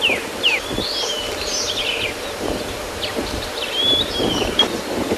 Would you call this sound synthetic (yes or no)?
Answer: yes